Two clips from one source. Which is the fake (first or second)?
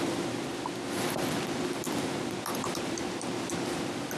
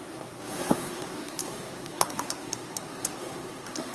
second